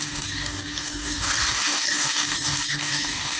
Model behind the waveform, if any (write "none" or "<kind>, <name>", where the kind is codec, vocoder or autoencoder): codec, DAC